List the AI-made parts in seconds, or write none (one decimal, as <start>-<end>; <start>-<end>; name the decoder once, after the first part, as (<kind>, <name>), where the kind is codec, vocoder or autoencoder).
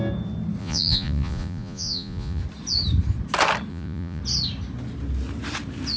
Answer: 0.6-2.4 (vocoder, Vocos); 3.7-4.2